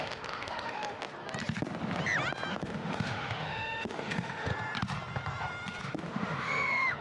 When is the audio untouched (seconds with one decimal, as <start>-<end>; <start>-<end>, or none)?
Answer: 1.0-2.5; 4.5-5.8